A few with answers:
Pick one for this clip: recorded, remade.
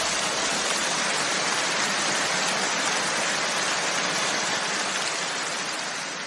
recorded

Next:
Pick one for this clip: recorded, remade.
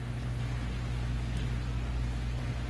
recorded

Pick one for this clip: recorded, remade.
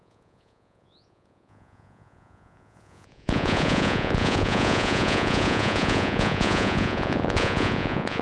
remade